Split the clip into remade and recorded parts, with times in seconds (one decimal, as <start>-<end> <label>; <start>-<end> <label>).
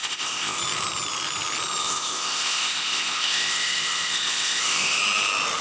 0.0-0.6 remade; 0.6-1.8 recorded; 1.8-5.0 remade; 5.0-5.6 recorded